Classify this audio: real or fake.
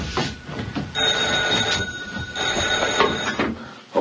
real